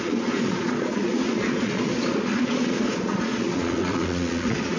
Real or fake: fake